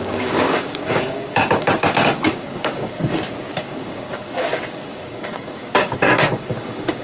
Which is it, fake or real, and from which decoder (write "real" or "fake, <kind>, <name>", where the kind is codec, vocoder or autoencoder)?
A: fake, codec, DAC